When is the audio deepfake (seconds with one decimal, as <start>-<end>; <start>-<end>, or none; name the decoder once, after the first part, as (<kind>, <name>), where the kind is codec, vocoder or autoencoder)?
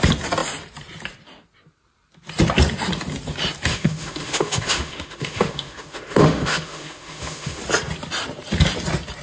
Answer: 3.7-7.6 (autoencoder, DAC-VAE)